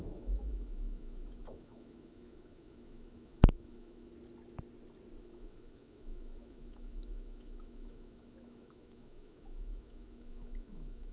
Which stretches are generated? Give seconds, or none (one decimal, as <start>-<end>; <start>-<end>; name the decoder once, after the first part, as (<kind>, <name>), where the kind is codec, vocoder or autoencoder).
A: 0.0-4.1 (autoencoder, DAC-VAE); 5.2-11.1